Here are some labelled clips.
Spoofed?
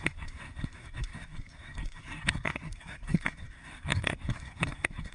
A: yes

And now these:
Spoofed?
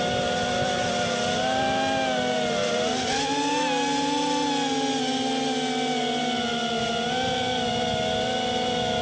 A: no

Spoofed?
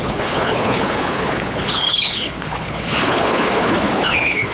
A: yes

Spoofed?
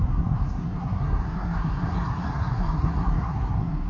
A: yes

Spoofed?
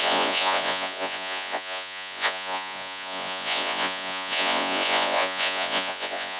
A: yes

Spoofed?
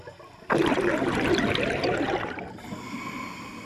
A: no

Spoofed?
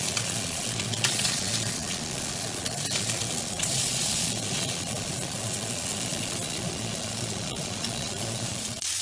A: yes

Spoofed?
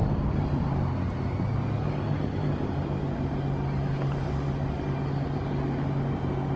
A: no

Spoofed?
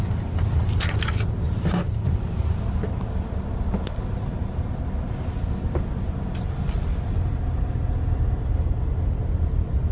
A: no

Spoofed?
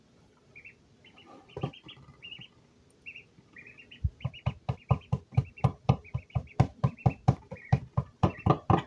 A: no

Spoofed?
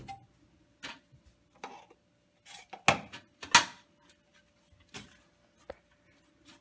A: no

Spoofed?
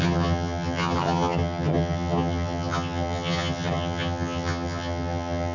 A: yes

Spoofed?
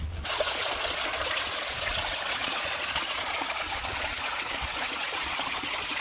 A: yes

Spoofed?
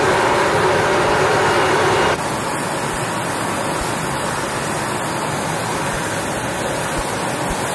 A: no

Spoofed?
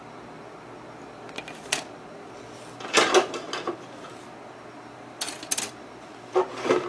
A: no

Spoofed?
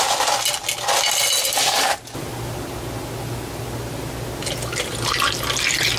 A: no